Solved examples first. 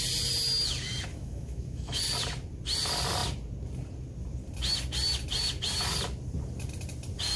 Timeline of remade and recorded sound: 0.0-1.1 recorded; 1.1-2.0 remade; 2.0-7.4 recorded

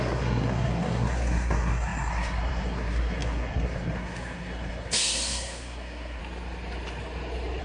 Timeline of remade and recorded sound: 0.0-6.2 remade; 6.2-7.6 recorded

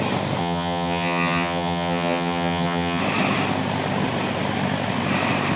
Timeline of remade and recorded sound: 0.0-0.4 recorded; 0.4-3.0 remade; 3.0-5.6 recorded

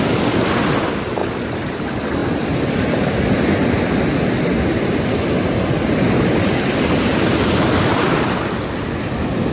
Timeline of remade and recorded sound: 0.0-9.5 recorded

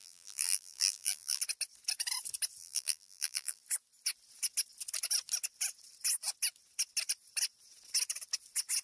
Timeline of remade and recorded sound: 0.0-1.4 remade; 1.4-2.6 recorded; 2.6-3.6 remade; 3.6-8.8 recorded

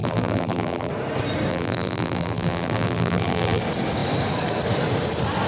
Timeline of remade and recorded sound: 0.0-0.9 remade; 0.9-1.5 recorded; 1.5-3.6 remade; 3.6-5.5 recorded

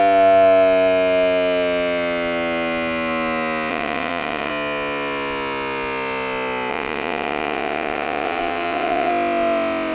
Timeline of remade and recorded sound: 0.0-3.7 recorded; 3.7-4.5 remade; 4.5-6.7 recorded; 6.7-9.1 remade; 9.1-9.9 recorded

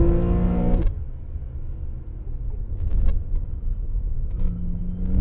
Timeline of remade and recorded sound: 0.0-5.2 recorded